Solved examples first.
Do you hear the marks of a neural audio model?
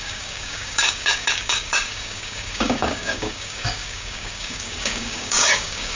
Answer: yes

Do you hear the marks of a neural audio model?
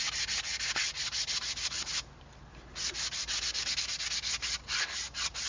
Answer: no